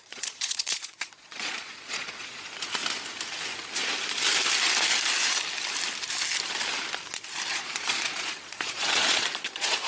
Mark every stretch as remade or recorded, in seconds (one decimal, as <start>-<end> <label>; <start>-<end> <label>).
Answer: 0.0-2.8 remade; 2.8-7.5 recorded; 7.5-9.9 remade